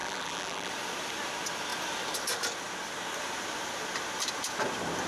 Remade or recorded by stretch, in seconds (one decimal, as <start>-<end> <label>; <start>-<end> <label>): 0.0-0.7 remade; 0.7-5.1 recorded